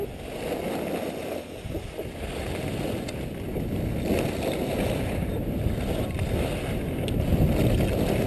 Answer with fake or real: real